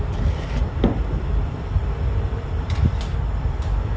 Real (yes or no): no